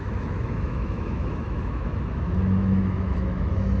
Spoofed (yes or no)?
yes